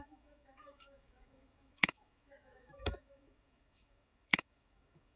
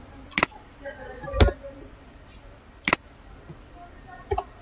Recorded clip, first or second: second